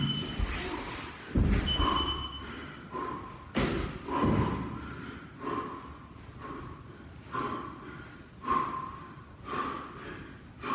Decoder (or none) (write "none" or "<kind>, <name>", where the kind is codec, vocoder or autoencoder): none